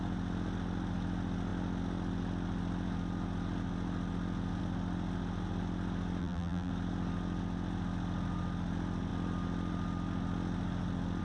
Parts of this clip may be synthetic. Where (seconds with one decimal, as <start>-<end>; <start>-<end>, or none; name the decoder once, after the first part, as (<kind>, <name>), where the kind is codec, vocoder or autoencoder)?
6.2-6.7 (vocoder, BigVGAN v2)